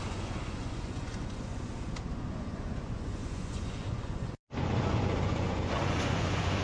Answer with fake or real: fake